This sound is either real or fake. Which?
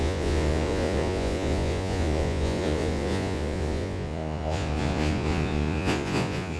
fake